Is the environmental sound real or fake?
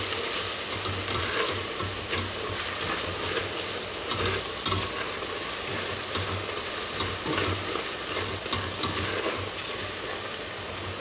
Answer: real